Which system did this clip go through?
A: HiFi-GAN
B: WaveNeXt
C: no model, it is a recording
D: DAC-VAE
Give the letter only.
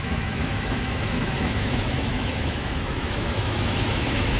D